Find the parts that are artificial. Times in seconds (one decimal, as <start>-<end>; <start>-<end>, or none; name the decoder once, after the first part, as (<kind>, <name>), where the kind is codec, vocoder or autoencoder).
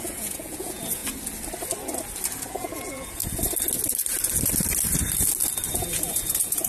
0.0-1.0 (vocoder, Vocos); 2.5-3.2; 5.7-6.7